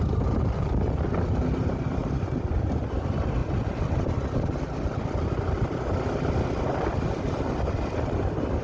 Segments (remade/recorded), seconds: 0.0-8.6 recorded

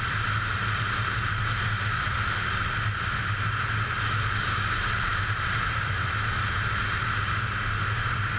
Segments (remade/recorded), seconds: 0.0-8.4 recorded

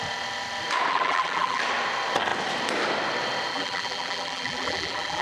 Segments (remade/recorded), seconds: 0.0-0.9 recorded; 0.9-1.6 remade; 1.6-3.5 recorded; 3.5-5.2 remade

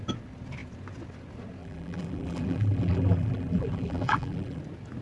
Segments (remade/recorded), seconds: 0.0-1.6 recorded; 1.6-4.6 remade; 4.6-5.0 recorded

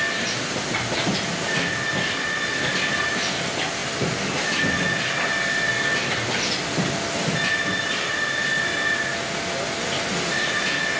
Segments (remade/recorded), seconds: 0.0-11.0 recorded

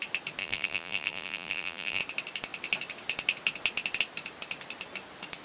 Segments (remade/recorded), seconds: 0.0-0.4 recorded; 0.4-2.0 remade; 2.0-5.4 recorded

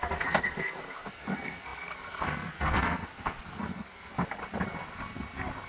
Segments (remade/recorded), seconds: 0.0-4.1 remade; 4.1-5.7 recorded